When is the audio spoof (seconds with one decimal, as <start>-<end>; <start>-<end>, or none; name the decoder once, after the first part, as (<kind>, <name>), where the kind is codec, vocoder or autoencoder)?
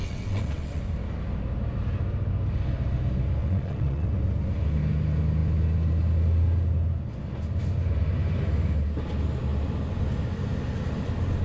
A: 0.0-0.8 (vocoder, WaveNeXt); 3.4-4.1